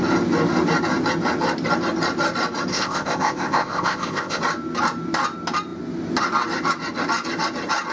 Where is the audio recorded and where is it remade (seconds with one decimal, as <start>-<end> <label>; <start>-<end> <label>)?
0.0-2.7 recorded; 2.7-4.4 remade; 4.4-7.9 recorded